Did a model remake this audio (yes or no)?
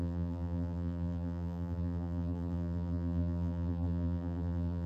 yes